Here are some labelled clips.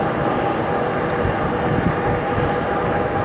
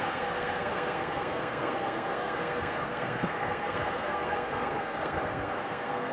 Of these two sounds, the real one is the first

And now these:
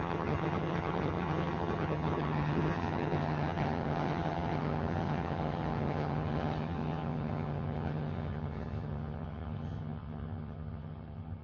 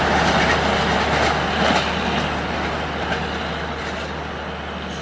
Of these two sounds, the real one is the second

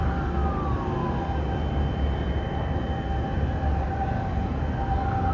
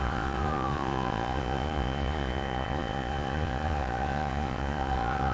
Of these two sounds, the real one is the first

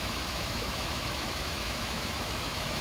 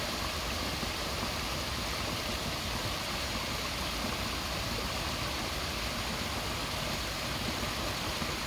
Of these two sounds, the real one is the second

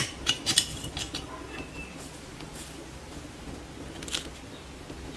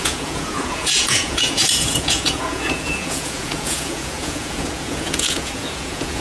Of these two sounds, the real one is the first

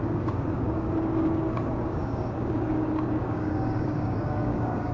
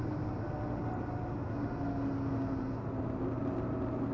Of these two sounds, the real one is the second